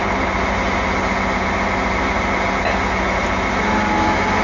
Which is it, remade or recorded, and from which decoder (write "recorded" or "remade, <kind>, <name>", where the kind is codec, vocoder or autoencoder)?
recorded